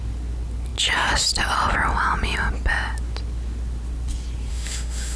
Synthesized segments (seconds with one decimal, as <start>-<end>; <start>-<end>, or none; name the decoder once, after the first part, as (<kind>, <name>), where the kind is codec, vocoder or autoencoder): 4.5-5.2 (autoencoder, DAC-VAE)